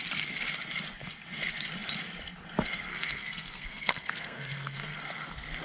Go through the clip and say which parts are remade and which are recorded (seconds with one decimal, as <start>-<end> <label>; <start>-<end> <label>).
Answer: 0.0-2.9 recorded; 2.9-5.0 remade; 5.0-5.6 recorded